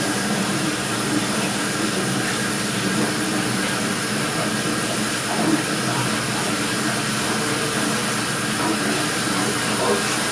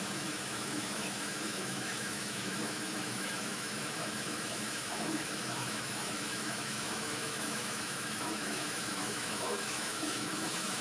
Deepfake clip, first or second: second